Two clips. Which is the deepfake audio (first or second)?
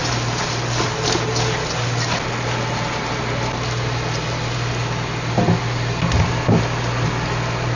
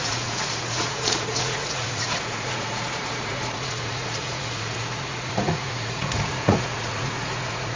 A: second